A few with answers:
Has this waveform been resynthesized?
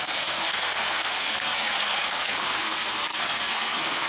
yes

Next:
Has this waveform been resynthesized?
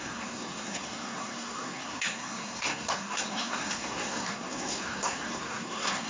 yes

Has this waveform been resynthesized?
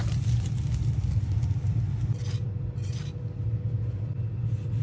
no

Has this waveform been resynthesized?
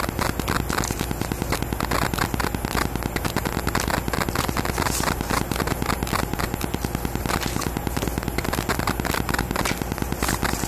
no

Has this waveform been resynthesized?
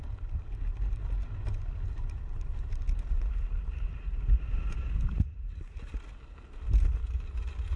no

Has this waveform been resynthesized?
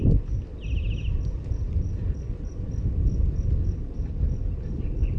no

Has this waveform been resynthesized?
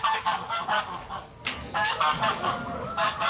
yes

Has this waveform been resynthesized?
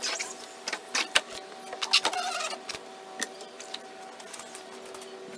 no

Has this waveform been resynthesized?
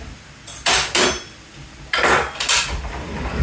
no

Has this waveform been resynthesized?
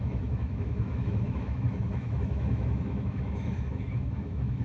yes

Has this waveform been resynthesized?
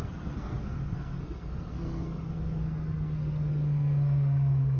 yes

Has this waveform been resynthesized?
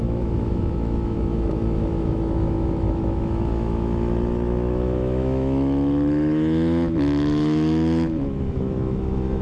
yes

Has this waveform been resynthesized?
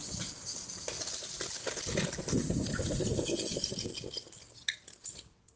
no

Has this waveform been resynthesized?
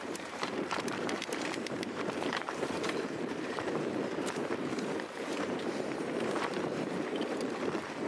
yes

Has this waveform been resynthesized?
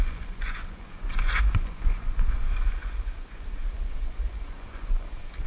yes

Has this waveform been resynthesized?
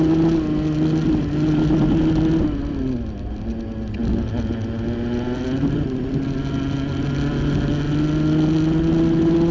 no